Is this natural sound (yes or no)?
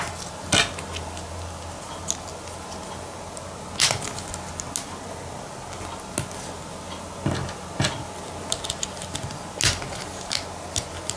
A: yes